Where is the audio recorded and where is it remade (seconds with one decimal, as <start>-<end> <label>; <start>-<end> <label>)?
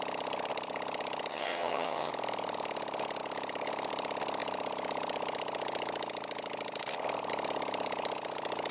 0.0-1.3 recorded; 1.3-2.1 remade; 2.1-8.7 recorded